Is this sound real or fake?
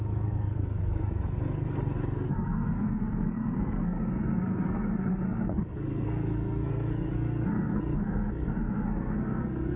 fake